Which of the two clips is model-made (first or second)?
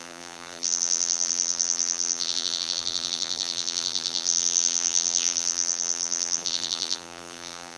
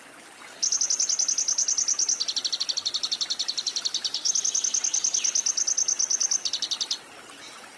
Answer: first